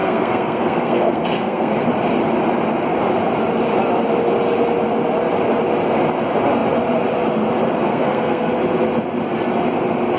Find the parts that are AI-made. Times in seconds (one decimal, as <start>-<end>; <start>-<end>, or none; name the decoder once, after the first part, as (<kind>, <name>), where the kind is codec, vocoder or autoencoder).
0.0-1.7 (codec, SNAC); 7.9-8.5